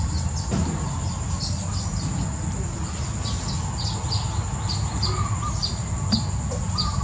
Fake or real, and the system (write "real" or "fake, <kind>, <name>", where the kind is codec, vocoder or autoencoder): real